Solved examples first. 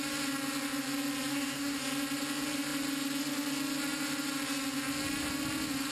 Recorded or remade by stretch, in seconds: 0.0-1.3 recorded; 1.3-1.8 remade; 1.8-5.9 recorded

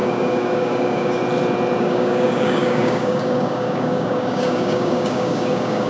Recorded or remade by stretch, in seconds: 0.0-1.2 remade; 1.2-1.8 recorded; 1.8-5.9 remade

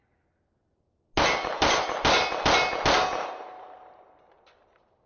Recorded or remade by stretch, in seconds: 0.0-5.1 recorded

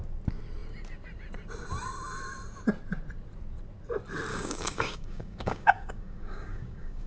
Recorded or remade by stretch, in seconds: 0.0-4.3 recorded; 4.3-7.1 remade

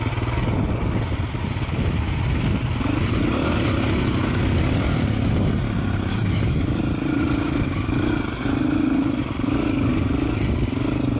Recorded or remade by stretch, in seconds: 0.0-6.1 recorded; 6.1-6.8 remade; 6.8-11.2 recorded

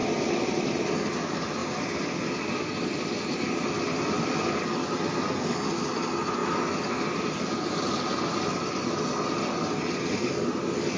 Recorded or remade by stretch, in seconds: 0.0-11.0 recorded

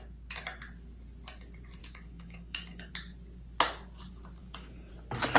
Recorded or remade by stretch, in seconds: 0.0-1.8 recorded; 1.8-2.9 remade; 2.9-4.4 recorded; 4.4-4.9 remade; 4.9-5.4 recorded

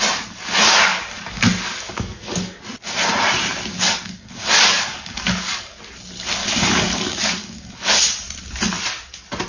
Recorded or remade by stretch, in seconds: 0.0-0.9 recorded; 0.9-2.6 remade; 2.6-3.7 recorded; 3.7-5.8 remade; 5.8-6.4 recorded; 6.4-8.0 remade; 8.0-9.5 recorded